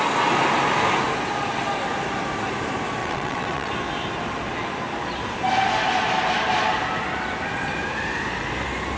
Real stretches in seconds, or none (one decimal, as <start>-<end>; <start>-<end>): 0.0-3.0; 3.7-9.0